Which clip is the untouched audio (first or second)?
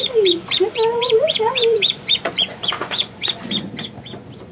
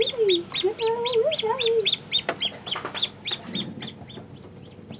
second